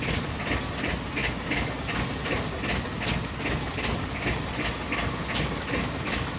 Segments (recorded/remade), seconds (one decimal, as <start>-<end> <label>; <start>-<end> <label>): 0.0-6.4 recorded

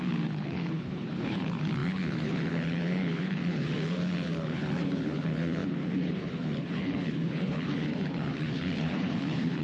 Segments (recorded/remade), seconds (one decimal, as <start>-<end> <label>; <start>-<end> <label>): 0.0-9.6 remade

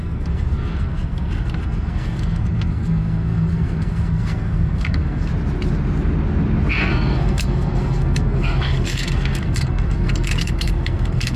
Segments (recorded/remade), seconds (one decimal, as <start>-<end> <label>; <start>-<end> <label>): 0.0-5.3 remade; 5.3-6.7 recorded; 6.7-11.4 remade

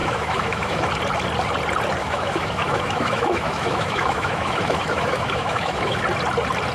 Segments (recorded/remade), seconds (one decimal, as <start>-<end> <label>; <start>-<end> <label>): 0.0-0.9 remade; 0.9-2.0 recorded; 2.0-6.0 remade; 6.0-6.7 recorded

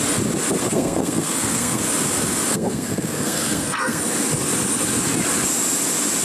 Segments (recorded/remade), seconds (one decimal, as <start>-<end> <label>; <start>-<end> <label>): 0.0-0.6 recorded; 0.6-1.8 remade; 1.8-2.5 recorded; 2.5-4.0 remade; 4.0-6.2 recorded

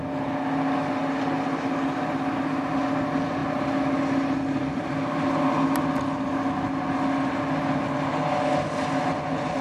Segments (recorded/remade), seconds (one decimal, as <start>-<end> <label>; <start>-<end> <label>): 0.0-9.6 recorded